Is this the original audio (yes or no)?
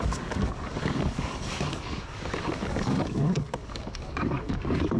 no